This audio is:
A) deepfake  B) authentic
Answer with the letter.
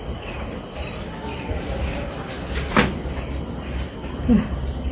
B